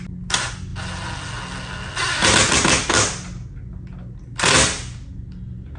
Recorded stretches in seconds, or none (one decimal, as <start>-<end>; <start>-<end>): 0.0-5.8